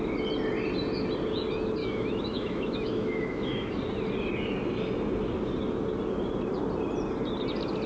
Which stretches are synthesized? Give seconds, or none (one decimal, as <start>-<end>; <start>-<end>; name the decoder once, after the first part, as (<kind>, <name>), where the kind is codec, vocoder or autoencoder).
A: 1.8-3.7 (autoencoder, DAC-VAE)